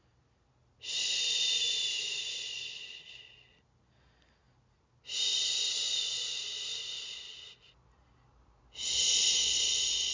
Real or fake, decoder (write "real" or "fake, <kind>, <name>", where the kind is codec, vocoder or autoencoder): real